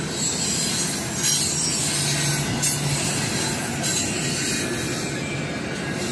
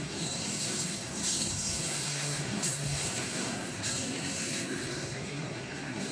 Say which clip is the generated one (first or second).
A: second